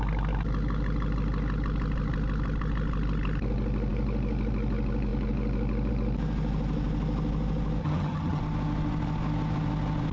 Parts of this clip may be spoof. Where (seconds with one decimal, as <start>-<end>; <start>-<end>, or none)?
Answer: 7.8-8.4